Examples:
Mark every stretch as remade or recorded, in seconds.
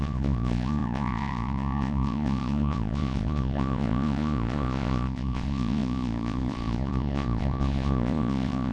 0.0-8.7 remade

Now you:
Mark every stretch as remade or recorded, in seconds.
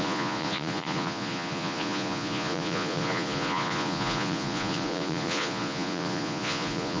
0.0-7.0 remade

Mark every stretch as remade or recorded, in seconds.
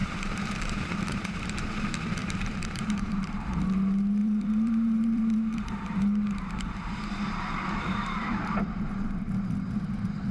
0.0-1.7 remade; 1.7-2.2 recorded; 2.2-3.6 remade; 3.6-4.2 recorded; 4.2-8.9 remade; 8.9-10.3 recorded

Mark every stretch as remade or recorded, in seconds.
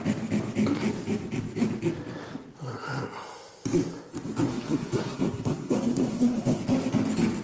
0.0-4.5 recorded; 4.5-6.6 remade; 6.6-7.4 recorded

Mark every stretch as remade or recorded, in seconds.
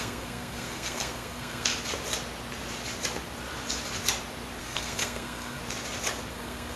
0.0-1.7 remade; 1.7-4.6 recorded; 4.6-5.6 remade; 5.6-6.3 recorded; 6.3-6.8 remade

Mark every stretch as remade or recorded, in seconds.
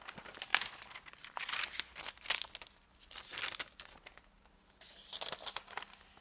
0.0-6.2 recorded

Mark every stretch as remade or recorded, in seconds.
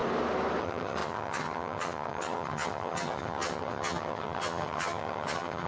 0.0-0.6 recorded; 0.6-5.7 remade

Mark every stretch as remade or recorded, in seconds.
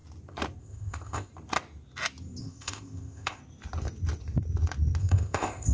0.0-0.6 recorded; 0.6-1.3 remade; 1.3-2.4 recorded; 2.4-3.4 remade; 3.4-5.0 recorded; 5.0-5.7 remade